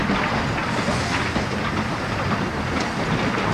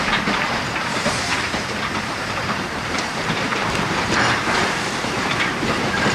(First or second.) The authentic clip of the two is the first